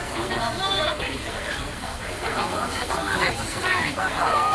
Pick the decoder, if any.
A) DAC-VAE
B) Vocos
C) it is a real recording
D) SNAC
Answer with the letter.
D